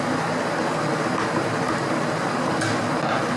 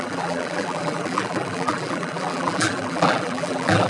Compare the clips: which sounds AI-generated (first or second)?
second